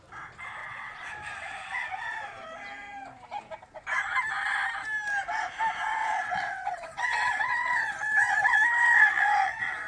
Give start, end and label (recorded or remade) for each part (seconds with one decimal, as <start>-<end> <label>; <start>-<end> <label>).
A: 0.0-0.6 recorded; 0.6-1.1 remade; 1.1-6.0 recorded; 6.0-9.9 remade